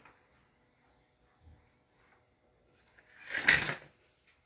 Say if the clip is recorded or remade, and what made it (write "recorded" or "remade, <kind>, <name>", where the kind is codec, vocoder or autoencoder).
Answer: recorded